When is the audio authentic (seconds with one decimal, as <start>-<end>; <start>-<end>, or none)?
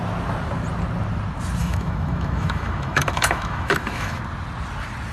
0.0-1.6; 4.2-5.1